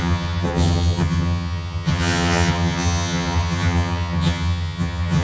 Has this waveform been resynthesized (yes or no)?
yes